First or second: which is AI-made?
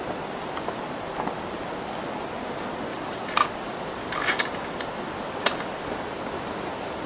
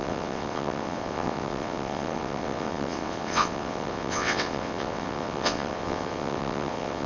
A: second